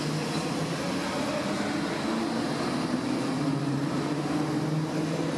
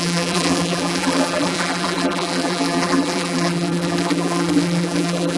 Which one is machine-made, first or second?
second